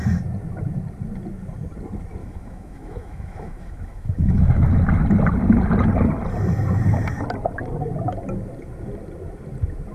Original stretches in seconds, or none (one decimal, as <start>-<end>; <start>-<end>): 0.0-2.2; 4.7-9.9